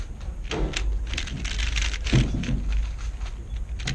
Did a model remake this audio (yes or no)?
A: no